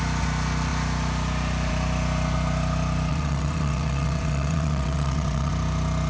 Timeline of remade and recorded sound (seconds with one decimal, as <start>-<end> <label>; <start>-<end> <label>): 0.0-3.1 recorded; 3.1-5.5 remade; 5.5-6.1 recorded